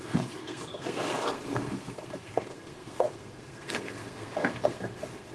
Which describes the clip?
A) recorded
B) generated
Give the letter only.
B